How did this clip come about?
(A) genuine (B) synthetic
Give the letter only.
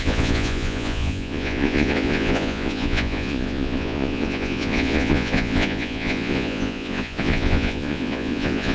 B